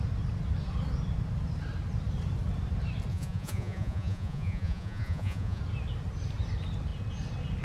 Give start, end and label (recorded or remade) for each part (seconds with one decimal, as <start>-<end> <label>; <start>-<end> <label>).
0.0-3.1 recorded; 3.1-5.6 remade; 5.6-7.6 recorded

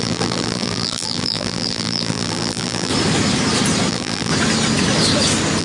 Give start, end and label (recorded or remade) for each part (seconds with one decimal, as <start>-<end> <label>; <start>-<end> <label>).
0.0-2.9 remade; 2.9-3.9 recorded; 3.9-4.3 remade; 4.3-5.6 recorded

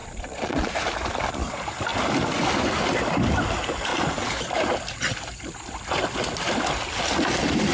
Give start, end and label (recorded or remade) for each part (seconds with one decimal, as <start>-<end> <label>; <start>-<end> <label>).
0.0-0.7 remade; 0.7-7.7 recorded

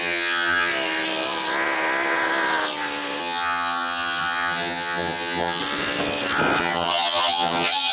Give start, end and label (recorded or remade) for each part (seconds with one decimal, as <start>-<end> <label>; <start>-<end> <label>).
0.0-0.7 remade; 0.7-3.2 recorded; 3.2-5.6 remade; 5.6-6.6 recorded; 6.6-7.9 remade

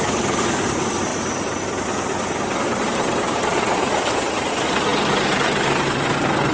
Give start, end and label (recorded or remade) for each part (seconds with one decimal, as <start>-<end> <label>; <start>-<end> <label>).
0.0-6.5 recorded